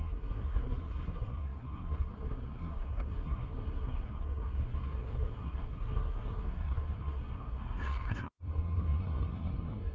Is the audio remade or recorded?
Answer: remade